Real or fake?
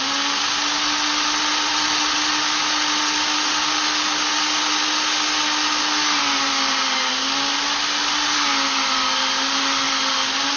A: real